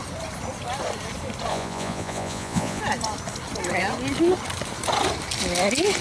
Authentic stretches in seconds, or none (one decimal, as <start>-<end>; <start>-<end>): 0.0-1.5; 2.8-6.0